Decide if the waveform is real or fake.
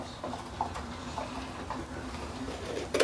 real